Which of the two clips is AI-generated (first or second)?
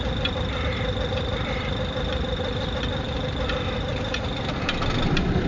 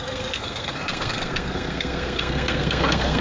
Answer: second